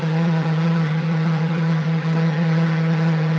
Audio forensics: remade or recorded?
remade